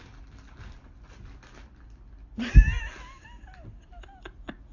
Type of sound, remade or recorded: recorded